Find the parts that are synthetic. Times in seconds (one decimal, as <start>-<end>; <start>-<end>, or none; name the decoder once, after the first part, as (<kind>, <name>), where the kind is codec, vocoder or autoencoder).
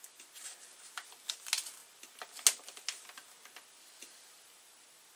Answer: none